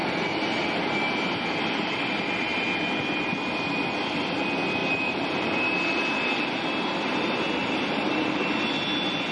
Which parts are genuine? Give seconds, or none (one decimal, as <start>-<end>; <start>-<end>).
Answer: 0.0-4.8; 6.4-7.6; 8.6-9.3